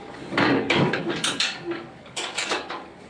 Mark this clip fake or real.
fake